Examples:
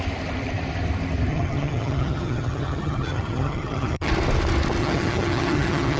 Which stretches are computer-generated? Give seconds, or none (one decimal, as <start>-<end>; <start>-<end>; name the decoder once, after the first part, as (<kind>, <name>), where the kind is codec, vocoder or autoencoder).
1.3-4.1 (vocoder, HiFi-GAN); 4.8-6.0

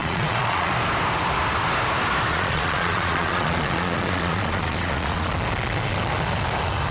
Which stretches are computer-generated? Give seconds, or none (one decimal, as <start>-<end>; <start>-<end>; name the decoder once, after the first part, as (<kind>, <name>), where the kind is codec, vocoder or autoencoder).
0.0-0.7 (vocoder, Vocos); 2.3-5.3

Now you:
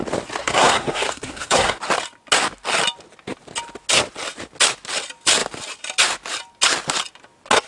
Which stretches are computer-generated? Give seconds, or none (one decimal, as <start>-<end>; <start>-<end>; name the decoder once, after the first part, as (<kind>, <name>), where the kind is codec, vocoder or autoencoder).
0.4-1.8 (codec, SNAC)

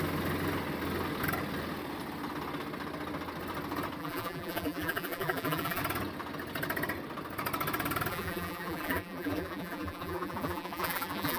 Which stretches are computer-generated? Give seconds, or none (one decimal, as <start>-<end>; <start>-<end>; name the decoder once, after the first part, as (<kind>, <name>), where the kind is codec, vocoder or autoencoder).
4.0-5.8 (vocoder, BigVGAN v2); 8.1-11.4